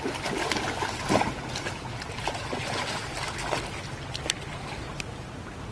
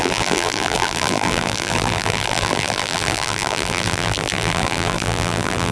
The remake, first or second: second